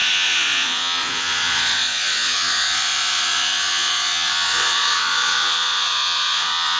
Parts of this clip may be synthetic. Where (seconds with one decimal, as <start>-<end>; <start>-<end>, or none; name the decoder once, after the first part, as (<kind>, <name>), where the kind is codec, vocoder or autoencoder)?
0.0-6.8 (vocoder, Vocos)